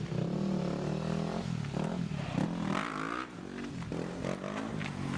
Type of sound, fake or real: real